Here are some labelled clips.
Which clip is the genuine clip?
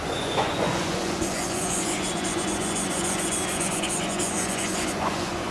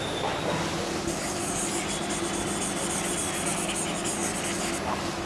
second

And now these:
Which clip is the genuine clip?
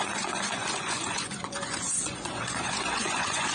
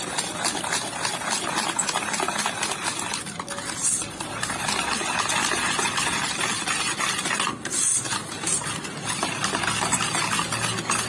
second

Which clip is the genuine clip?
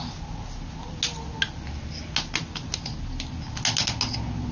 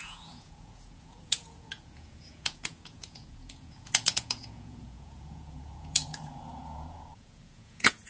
first